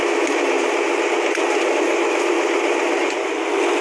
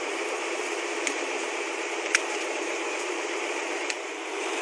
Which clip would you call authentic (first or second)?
first